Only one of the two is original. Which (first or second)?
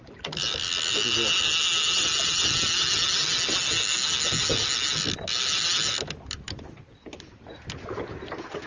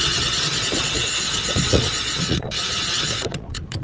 first